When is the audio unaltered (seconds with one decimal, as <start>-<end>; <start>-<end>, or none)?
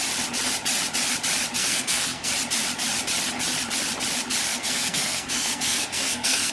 0.0-1.6; 2.3-4.5